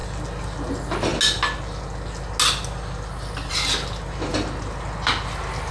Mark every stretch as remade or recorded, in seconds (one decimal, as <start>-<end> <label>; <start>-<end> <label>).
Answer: 0.0-5.7 recorded